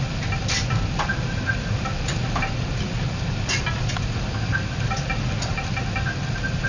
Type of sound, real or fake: real